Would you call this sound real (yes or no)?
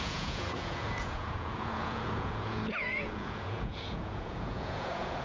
no